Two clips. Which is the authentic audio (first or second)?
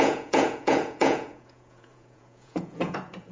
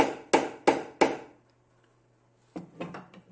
second